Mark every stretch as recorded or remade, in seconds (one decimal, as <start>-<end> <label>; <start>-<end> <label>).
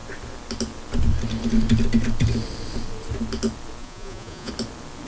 0.0-3.8 recorded; 3.8-4.5 remade; 4.5-5.1 recorded